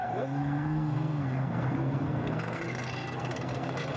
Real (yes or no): no